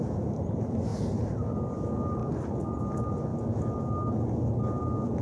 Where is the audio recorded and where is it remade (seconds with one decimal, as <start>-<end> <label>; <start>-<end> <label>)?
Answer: 0.0-5.2 recorded